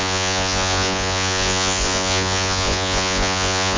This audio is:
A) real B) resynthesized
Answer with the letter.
B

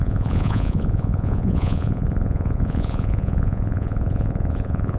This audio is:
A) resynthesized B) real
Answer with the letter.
A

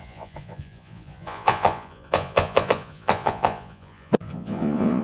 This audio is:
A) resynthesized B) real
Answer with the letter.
A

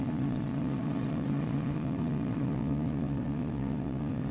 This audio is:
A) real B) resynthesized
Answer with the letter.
B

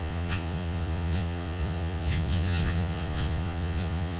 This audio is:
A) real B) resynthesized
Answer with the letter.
B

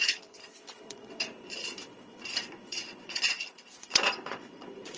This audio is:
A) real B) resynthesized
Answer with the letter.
B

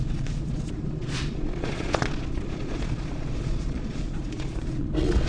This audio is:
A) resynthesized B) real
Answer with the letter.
A